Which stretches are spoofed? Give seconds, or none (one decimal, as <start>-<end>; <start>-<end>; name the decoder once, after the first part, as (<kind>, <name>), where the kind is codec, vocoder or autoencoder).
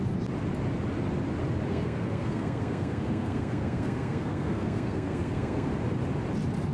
1.7-5.7 (codec, SNAC)